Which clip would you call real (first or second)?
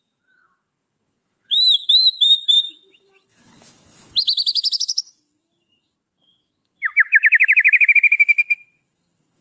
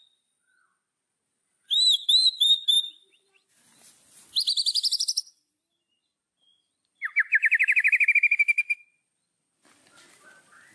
second